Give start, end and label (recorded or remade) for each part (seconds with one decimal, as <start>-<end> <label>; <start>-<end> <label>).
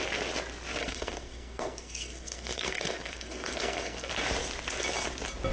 0.0-0.8 recorded; 0.8-4.1 remade; 4.1-5.5 recorded